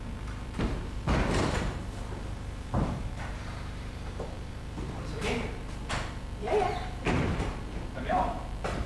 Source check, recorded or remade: remade